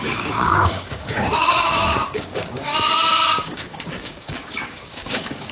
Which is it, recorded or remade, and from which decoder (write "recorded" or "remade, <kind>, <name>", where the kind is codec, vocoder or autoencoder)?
remade, codec, DAC